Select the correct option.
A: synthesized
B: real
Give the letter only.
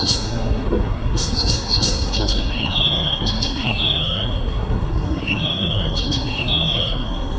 A